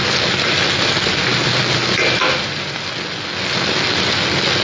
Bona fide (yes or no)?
yes